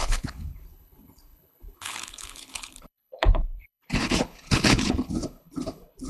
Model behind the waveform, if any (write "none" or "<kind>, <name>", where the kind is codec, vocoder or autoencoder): codec, HILCodec